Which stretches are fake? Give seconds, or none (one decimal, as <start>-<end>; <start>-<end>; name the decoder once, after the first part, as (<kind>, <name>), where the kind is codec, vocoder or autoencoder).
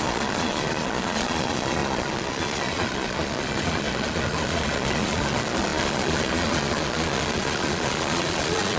0.0-8.8 (vocoder, Vocos)